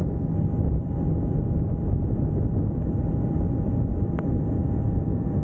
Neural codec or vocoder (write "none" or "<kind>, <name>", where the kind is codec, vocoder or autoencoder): none